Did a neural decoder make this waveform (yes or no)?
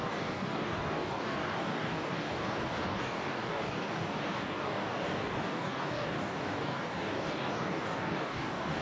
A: yes